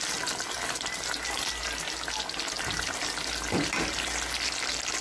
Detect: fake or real real